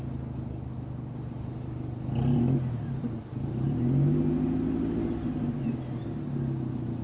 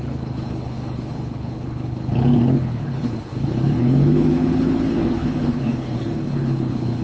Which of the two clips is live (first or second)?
first